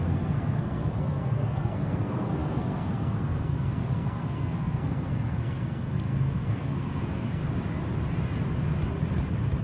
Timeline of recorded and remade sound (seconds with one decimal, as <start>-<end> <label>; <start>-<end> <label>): 0.0-7.4 remade; 7.4-9.6 recorded

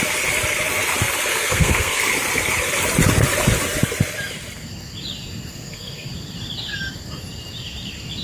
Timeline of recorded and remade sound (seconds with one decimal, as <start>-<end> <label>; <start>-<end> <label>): 0.0-1.3 recorded; 1.3-2.1 remade; 2.1-5.5 recorded; 5.5-6.1 remade; 6.1-8.2 recorded

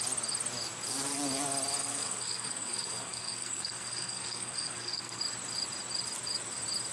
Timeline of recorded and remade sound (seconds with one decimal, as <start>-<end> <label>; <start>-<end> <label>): 0.0-1.8 recorded; 1.8-5.2 remade; 5.2-6.9 recorded